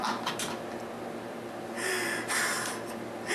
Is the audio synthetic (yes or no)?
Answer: no